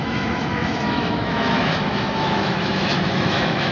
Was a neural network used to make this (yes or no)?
yes